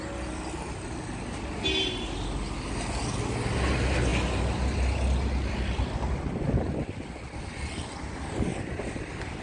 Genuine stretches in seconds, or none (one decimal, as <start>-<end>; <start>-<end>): 0.0-9.4